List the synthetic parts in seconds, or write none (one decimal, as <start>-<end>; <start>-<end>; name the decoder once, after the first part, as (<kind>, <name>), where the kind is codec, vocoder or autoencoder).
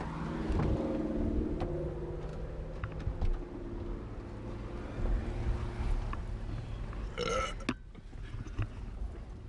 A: none